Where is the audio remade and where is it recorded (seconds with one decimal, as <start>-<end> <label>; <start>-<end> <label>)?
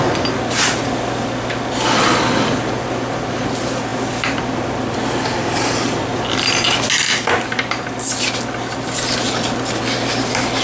0.0-10.6 recorded